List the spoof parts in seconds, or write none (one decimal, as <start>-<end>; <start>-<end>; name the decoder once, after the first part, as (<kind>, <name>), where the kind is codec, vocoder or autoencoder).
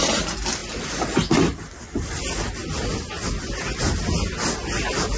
none